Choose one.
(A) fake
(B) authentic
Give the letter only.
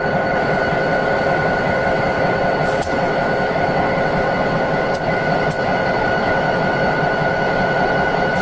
A